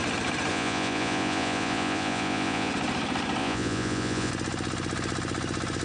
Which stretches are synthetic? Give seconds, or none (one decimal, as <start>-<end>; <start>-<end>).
0.5-2.7; 3.4-4.3